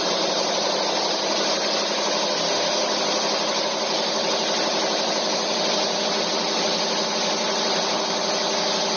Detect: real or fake real